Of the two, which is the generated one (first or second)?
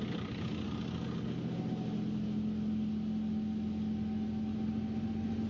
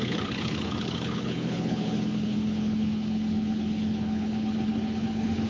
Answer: second